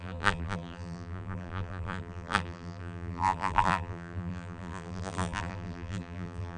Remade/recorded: remade